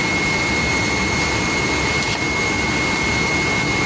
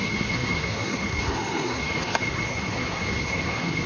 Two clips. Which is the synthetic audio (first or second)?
second